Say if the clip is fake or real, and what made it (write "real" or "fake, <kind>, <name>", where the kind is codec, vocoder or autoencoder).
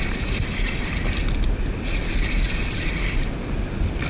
real